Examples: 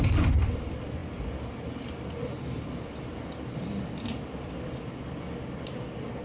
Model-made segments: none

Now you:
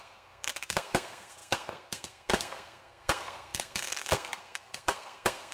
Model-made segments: 0.0-5.5

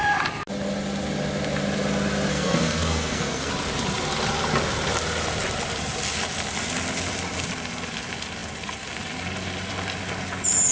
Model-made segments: 2.3-3.5

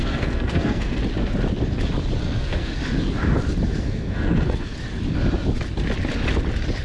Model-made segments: 0.0-1.0; 2.2-2.7; 3.8-4.7

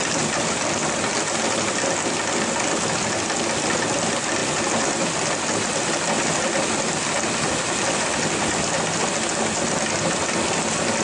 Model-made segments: none

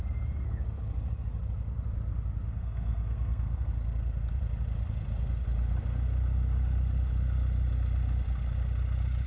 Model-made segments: 2.5-3.7

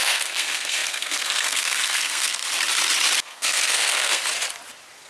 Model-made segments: 0.0-2.4; 3.2-4.2

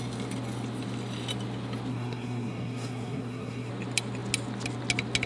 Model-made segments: 1.9-3.7